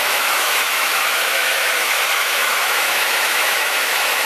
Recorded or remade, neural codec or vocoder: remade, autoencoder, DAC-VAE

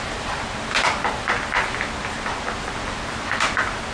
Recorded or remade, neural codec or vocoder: recorded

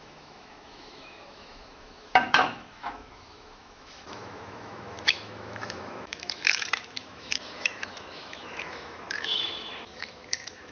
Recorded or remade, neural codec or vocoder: remade, autoencoder, DAC-VAE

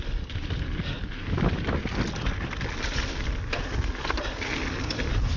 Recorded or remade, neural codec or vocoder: recorded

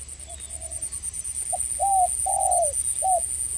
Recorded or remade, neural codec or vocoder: recorded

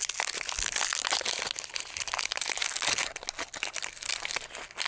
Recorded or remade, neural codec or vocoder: recorded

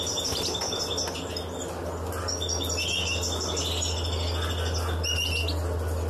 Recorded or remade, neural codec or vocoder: recorded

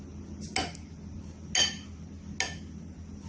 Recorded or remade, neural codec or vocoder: recorded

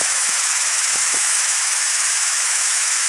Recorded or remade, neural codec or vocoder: remade, autoencoder, DAC-VAE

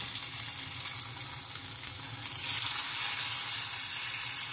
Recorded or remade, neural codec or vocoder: recorded